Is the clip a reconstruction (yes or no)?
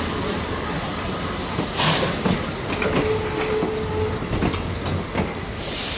no